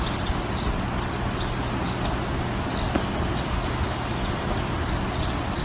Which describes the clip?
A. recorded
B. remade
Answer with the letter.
A